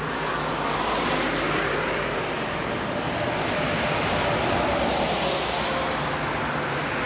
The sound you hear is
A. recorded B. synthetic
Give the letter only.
A